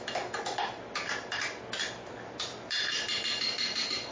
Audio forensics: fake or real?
real